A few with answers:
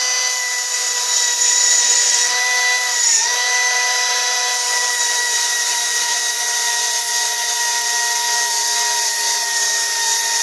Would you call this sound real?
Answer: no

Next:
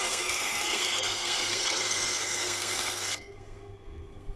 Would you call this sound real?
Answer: no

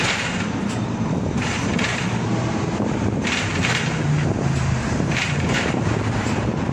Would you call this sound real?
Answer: no